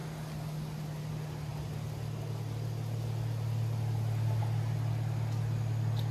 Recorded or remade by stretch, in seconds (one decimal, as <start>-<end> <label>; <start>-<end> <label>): 0.0-6.1 recorded